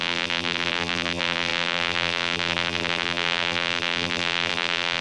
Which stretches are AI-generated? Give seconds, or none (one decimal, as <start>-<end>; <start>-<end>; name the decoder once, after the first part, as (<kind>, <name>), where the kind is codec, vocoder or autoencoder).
0.0-5.0 (vocoder, BigVGAN v2)